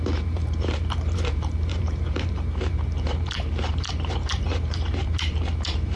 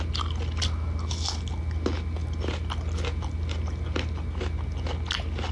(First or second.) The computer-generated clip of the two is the first